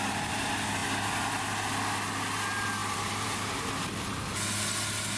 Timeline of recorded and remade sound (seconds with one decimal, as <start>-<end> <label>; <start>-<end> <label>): 0.0-2.8 recorded; 2.8-3.4 remade; 3.4-5.2 recorded